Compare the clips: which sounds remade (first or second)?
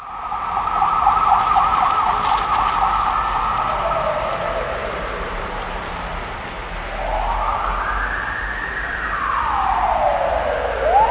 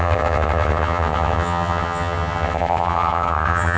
second